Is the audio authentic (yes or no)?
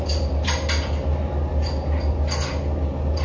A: yes